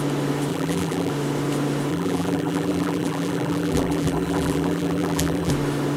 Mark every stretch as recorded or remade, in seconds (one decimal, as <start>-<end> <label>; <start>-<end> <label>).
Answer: 0.0-0.5 recorded; 0.5-1.1 remade; 1.1-1.9 recorded; 1.9-5.5 remade; 5.5-6.0 recorded